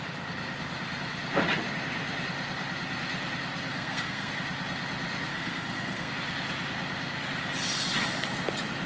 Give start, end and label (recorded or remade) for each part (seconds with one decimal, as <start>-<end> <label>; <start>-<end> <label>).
0.0-3.7 recorded; 3.7-4.3 remade; 4.3-5.3 recorded; 5.3-6.1 remade; 6.1-8.9 recorded